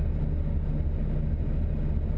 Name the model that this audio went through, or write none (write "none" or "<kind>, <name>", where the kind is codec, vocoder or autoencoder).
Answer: none